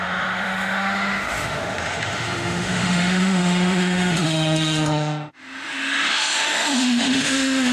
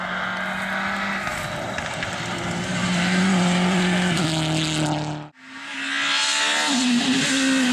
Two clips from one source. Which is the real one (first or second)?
second